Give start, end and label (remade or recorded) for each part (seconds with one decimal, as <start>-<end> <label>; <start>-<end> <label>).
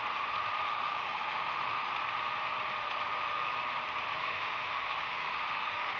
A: 0.0-0.7 recorded; 0.7-1.9 remade; 1.9-2.8 recorded; 2.8-3.5 remade; 3.5-4.1 recorded; 4.1-6.0 remade